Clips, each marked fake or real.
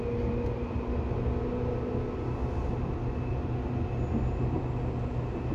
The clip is real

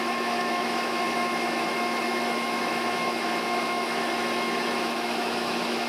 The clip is fake